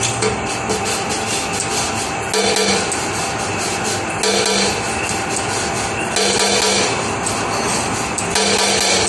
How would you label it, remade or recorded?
recorded